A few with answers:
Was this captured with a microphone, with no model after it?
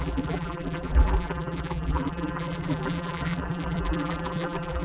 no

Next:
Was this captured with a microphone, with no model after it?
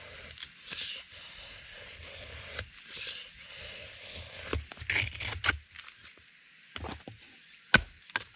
yes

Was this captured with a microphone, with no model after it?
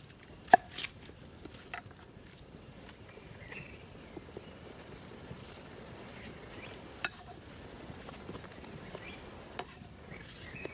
no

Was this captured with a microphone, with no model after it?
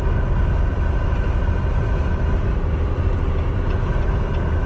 yes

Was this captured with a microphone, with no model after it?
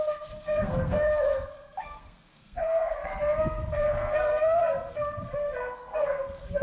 no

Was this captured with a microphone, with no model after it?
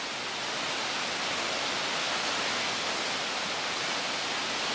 yes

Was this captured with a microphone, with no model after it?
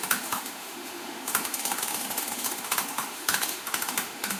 no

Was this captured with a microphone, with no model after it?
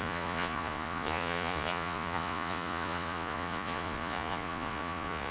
no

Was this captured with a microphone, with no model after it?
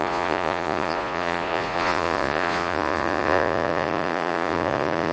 no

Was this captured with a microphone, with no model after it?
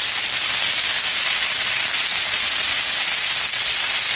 yes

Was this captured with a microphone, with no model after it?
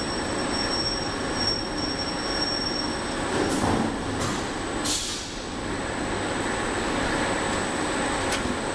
yes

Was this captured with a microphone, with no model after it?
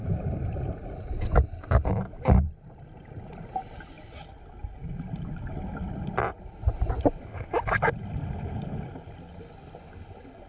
yes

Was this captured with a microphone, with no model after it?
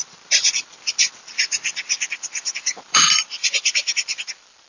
no